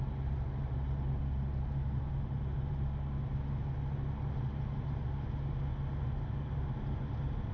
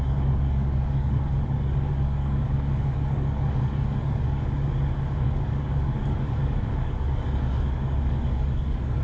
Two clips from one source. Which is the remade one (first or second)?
second